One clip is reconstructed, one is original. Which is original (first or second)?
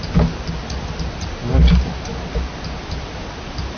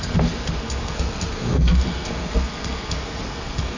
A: first